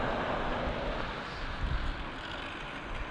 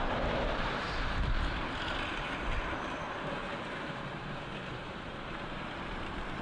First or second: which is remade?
second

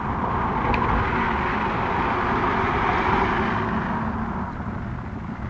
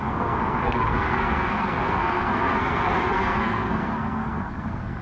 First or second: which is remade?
second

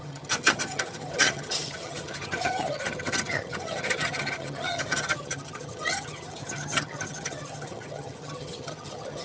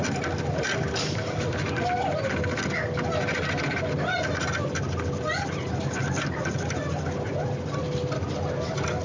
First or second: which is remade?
first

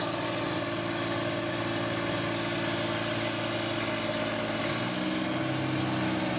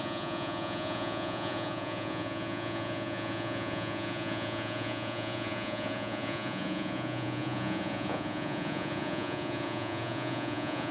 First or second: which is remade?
second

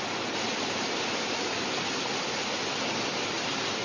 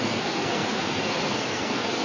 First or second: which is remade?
second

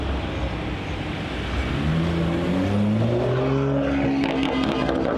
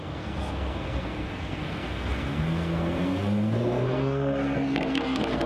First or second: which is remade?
second